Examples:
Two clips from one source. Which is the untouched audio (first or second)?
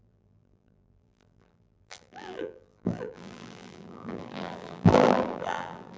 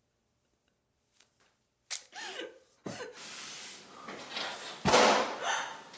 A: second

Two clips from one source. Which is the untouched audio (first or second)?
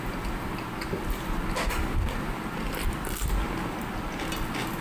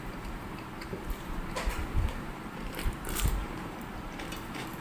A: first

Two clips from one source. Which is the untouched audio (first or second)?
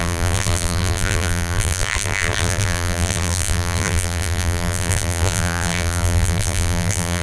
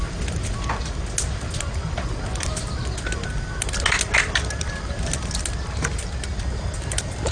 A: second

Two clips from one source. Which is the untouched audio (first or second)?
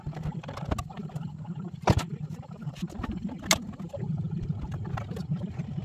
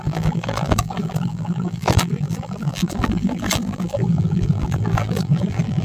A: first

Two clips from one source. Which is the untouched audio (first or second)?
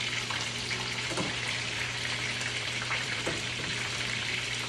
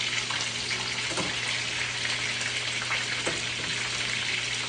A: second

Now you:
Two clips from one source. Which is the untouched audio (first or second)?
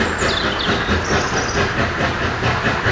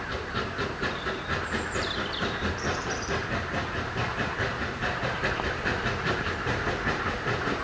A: first